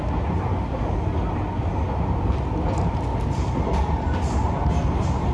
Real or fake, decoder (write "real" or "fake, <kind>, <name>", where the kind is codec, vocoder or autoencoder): real